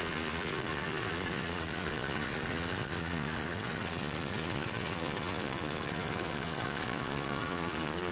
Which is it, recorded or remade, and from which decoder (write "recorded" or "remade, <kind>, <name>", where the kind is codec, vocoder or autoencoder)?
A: remade, vocoder, Vocos